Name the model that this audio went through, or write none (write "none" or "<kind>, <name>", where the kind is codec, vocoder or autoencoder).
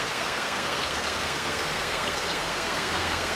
codec, SNAC